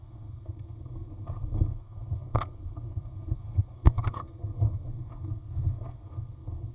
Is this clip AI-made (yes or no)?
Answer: yes